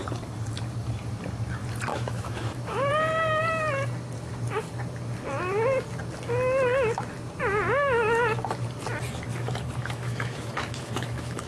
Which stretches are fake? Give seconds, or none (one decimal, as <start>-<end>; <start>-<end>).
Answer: 1.9-2.9; 9.8-11.5